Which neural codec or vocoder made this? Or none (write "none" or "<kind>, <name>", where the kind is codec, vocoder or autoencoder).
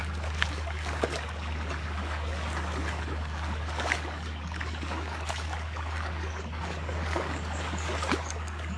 codec, DAC